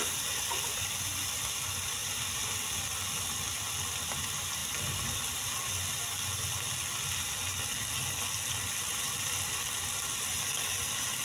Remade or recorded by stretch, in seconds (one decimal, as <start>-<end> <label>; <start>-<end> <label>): 0.0-11.2 recorded